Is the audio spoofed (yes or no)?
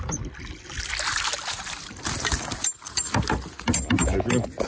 no